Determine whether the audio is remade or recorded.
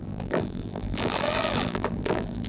remade